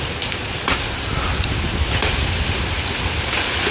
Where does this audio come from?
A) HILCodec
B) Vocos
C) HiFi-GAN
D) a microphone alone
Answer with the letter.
D